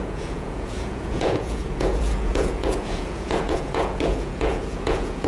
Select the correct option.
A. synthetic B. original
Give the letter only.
A